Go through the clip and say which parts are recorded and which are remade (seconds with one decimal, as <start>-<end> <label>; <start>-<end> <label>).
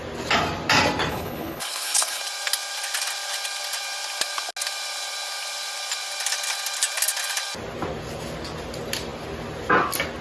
0.0-1.1 recorded; 1.1-2.2 remade; 2.2-10.2 recorded